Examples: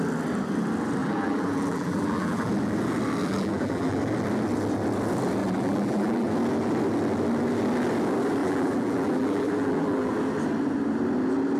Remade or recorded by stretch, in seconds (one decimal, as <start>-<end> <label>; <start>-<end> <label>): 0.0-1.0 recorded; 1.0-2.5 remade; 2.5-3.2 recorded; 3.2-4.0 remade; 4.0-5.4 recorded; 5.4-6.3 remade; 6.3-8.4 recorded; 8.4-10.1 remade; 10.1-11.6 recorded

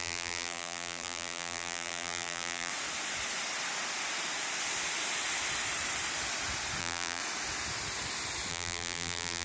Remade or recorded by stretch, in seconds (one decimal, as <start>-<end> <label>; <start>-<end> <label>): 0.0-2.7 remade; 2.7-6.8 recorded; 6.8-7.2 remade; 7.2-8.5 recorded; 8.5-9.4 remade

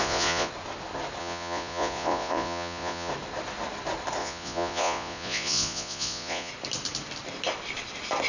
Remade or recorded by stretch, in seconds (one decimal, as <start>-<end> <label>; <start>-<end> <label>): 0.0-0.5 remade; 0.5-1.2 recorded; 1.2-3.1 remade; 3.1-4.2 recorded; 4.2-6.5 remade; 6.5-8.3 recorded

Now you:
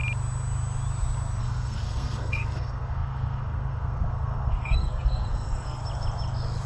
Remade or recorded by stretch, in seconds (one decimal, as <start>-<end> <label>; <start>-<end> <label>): 0.0-1.4 recorded; 1.4-5.8 remade; 5.8-6.7 recorded

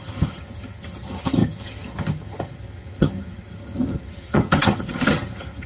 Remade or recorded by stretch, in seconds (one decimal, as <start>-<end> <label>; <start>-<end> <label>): 0.0-5.7 remade

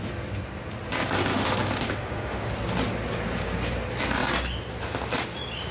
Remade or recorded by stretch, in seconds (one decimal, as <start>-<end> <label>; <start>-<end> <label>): 0.0-1.3 recorded; 1.3-2.5 remade; 2.5-5.7 recorded